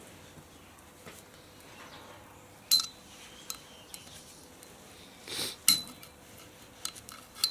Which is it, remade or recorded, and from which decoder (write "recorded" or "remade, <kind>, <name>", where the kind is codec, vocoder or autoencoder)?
recorded